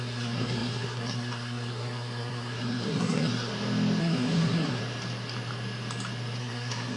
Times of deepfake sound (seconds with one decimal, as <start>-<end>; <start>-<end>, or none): 0.0-3.5; 4.0-4.8; 6.4-7.0